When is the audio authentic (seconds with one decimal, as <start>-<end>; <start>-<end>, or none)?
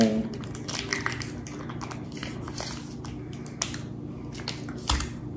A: 0.0-5.4